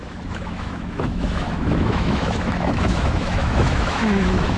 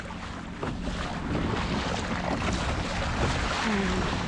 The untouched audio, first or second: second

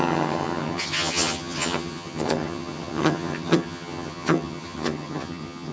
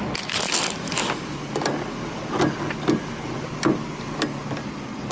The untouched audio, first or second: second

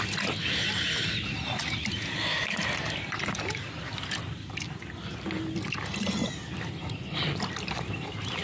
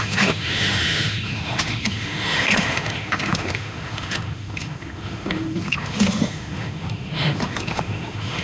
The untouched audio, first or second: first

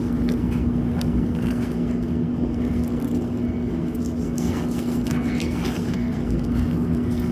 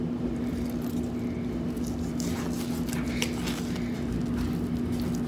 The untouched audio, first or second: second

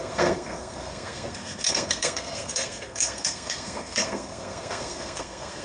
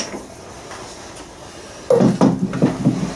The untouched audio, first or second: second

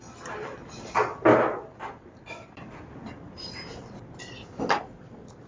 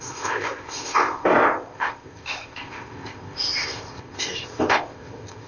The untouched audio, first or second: first